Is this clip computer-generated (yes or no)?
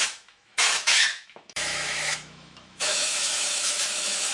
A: yes